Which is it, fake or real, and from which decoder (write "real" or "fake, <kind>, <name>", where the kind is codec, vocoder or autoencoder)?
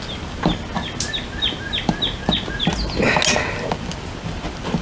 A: real